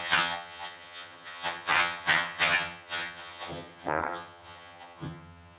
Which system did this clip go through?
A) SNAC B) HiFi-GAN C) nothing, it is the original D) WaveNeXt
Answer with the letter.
B